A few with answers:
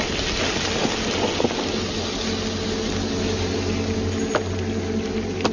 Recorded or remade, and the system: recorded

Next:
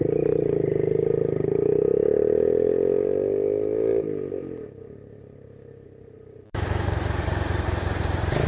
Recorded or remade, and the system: recorded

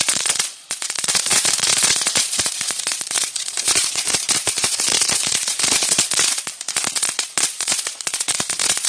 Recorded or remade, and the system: remade, vocoder, Vocos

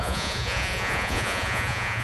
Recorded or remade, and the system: remade, vocoder, Vocos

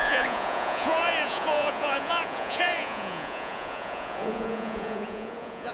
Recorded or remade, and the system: remade, vocoder, Vocos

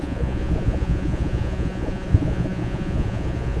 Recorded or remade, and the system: remade, vocoder, Vocos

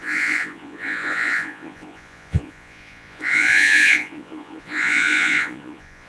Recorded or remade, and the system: remade, vocoder, Vocos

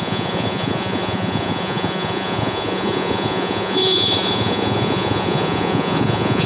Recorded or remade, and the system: remade, vocoder, Vocos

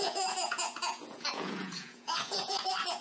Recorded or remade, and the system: remade, vocoder, Vocos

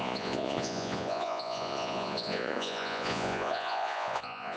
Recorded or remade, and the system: remade, vocoder, Vocos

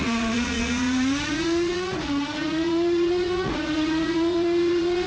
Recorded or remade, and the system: remade, vocoder, Vocos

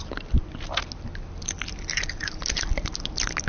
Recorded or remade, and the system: recorded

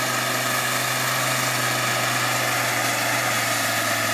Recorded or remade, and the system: recorded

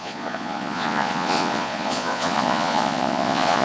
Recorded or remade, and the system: remade, vocoder, Vocos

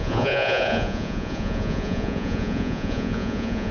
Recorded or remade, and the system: remade, vocoder, Vocos